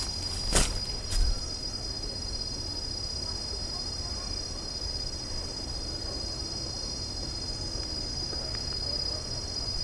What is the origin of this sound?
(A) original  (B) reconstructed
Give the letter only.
A